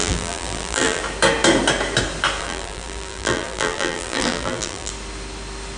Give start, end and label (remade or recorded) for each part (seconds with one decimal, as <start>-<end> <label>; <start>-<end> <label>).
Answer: 0.0-1.0 remade; 1.0-2.4 recorded; 2.4-4.9 remade; 4.9-5.8 recorded